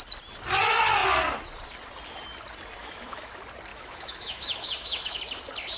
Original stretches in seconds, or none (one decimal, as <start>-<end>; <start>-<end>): 0.0-2.8; 3.3-3.7; 5.2-5.8